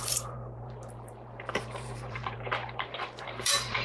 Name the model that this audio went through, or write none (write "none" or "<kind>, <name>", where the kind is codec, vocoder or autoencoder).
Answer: vocoder, BigVGAN v2